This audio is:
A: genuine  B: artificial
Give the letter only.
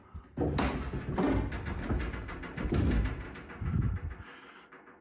A